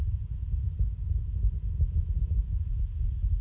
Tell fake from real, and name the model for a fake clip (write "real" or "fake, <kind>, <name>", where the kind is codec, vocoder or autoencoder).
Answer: real